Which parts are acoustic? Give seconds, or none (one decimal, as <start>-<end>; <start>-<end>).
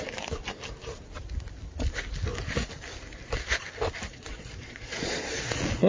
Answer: 0.0-4.1